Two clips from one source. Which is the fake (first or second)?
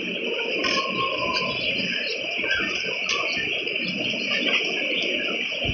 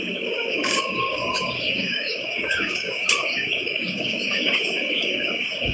second